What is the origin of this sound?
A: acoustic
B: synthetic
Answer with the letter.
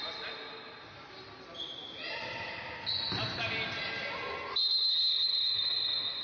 A